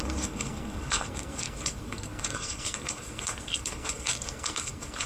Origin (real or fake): fake